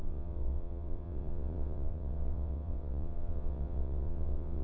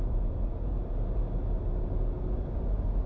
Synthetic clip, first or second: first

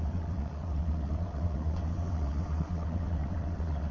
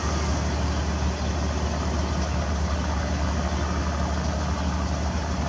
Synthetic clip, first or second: first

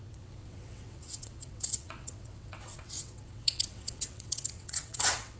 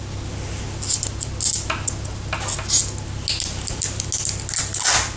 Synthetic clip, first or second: first